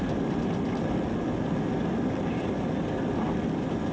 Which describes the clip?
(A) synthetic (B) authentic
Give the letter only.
B